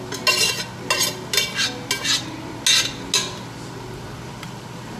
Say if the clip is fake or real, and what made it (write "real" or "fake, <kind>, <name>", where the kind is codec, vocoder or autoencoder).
real